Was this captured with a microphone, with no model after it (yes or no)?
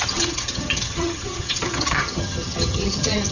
no